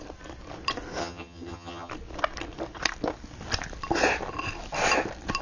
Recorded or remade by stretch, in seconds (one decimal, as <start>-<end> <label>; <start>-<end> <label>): 0.0-1.0 recorded; 1.0-1.9 remade; 1.9-5.4 recorded